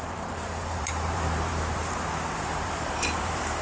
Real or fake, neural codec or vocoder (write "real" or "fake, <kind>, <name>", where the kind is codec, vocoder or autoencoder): fake, vocoder, BigVGAN v2